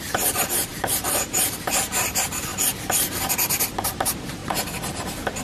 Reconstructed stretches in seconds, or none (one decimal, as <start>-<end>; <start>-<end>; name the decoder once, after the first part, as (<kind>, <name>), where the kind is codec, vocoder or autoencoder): 0.0-2.5 (vocoder, BigVGAN v2); 3.4-4.4